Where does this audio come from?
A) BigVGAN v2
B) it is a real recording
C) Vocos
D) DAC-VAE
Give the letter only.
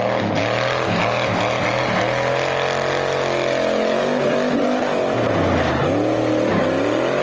B